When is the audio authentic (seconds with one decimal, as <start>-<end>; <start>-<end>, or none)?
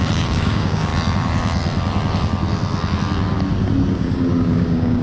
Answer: 0.9-3.9